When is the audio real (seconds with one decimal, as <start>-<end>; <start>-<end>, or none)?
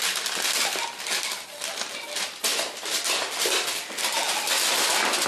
0.0-5.3